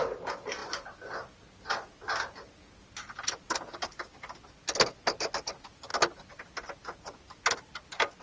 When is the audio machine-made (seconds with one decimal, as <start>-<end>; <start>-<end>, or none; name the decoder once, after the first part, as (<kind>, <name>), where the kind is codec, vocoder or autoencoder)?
none